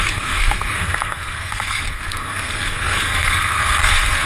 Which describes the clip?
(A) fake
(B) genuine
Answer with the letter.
A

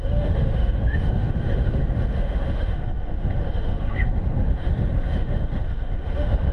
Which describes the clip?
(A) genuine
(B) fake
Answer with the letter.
B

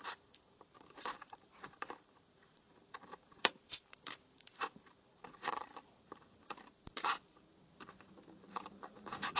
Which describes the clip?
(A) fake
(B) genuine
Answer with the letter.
A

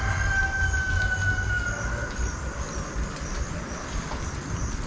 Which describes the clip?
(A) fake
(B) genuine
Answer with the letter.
B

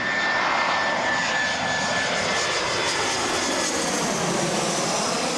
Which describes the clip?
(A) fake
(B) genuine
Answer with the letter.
B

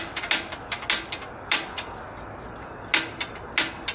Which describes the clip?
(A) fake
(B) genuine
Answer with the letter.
B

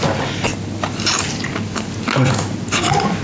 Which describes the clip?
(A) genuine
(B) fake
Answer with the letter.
A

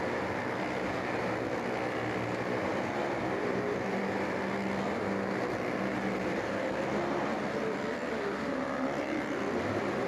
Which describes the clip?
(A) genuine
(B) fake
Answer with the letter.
A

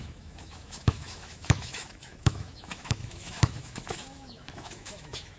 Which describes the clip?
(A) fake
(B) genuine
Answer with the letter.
A